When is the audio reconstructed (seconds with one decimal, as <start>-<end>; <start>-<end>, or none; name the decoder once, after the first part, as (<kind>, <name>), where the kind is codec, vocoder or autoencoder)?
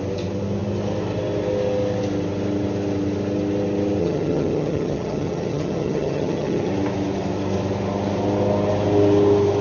4.0-6.7 (vocoder, HiFi-GAN)